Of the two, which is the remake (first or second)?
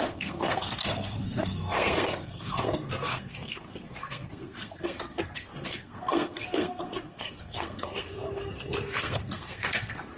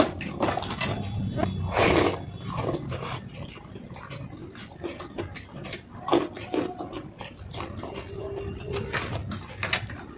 first